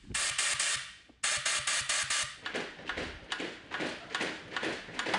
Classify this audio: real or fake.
real